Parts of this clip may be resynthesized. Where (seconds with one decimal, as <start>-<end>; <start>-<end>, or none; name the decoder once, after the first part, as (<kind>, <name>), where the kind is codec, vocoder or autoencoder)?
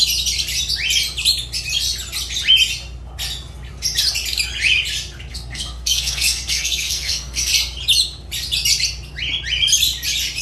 5.3-7.5 (codec, SNAC)